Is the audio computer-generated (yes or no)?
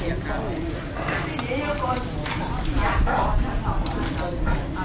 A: no